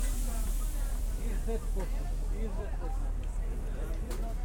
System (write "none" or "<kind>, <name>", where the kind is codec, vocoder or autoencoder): vocoder, BigVGAN v2